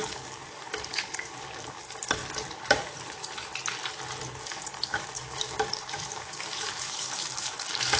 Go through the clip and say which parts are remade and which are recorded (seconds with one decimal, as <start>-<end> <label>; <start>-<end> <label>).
0.0-2.2 remade; 2.2-4.4 recorded; 4.4-8.0 remade